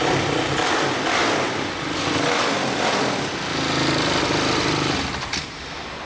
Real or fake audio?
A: real